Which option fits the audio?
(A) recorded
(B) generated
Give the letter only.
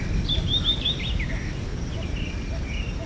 A